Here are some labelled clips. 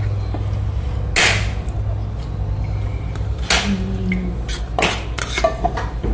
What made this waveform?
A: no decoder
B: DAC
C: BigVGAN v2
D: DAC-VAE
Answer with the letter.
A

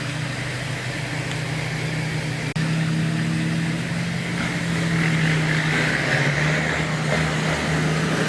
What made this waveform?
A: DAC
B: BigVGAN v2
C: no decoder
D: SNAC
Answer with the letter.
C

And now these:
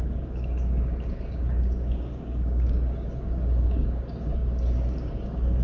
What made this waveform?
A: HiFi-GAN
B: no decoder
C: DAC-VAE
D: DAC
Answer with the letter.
D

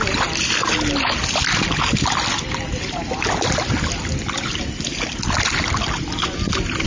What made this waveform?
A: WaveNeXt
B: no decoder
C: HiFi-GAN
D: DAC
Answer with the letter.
B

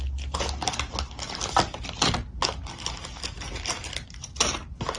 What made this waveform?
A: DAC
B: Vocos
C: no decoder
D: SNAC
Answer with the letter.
C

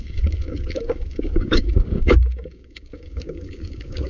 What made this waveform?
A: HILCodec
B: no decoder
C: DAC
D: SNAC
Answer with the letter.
C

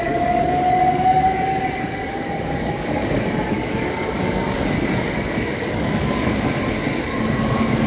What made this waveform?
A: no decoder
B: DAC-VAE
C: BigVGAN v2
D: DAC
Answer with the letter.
D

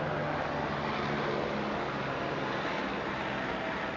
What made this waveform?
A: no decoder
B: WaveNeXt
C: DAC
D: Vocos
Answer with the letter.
A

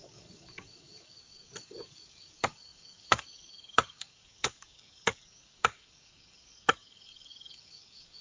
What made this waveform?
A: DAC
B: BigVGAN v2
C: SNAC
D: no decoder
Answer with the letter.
A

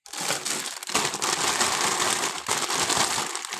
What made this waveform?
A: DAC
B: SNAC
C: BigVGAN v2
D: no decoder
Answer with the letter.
D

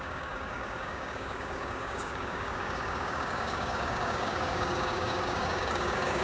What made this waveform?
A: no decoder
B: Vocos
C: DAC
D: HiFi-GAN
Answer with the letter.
C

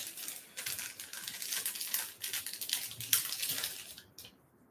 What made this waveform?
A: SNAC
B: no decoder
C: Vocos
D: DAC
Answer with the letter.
B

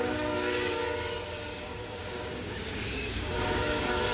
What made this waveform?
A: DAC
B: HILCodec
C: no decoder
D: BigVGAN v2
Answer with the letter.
A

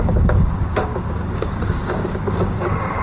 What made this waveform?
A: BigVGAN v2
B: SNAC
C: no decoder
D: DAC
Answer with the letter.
D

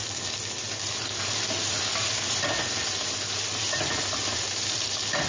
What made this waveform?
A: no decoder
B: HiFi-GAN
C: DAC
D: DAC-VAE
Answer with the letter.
A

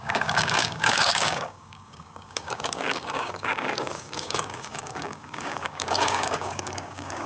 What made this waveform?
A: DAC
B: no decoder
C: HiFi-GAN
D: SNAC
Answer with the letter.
A